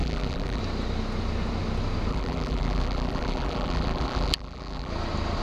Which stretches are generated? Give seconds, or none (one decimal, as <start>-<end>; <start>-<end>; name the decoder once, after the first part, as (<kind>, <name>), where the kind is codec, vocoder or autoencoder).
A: 0.0-0.6 (vocoder, BigVGAN v2); 2.1-4.9